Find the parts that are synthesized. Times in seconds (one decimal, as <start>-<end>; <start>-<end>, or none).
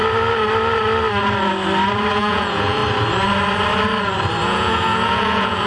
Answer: 2.1-2.8; 4.4-5.7